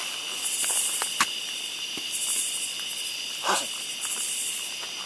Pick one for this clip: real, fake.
real